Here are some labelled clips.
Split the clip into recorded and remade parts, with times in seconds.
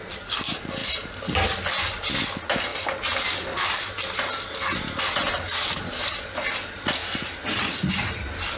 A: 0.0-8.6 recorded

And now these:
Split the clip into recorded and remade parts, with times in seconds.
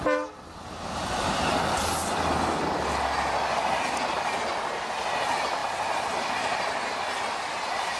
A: 0.0-8.0 recorded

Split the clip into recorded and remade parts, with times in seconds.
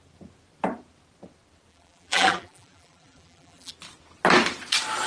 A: 0.0-1.7 recorded; 1.7-3.7 remade; 3.7-5.1 recorded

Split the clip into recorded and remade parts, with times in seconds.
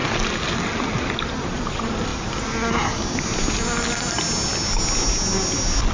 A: 0.0-1.0 recorded; 1.0-2.1 remade; 2.1-5.9 recorded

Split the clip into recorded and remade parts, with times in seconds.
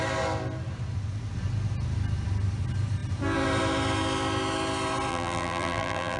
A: 0.0-5.1 recorded; 5.1-6.2 remade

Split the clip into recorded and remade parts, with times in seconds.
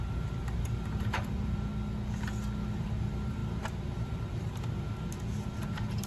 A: 0.0-1.7 remade; 1.7-2.8 recorded; 2.8-6.1 remade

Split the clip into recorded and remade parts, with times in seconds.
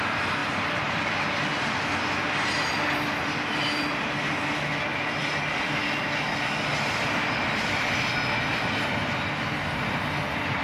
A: 0.0-0.4 recorded; 0.4-1.1 remade; 1.1-5.2 recorded; 5.2-5.7 remade; 5.7-10.6 recorded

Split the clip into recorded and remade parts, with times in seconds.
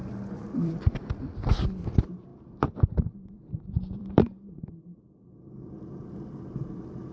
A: 0.0-1.5 remade; 1.5-2.3 recorded; 2.3-6.0 remade; 6.0-7.1 recorded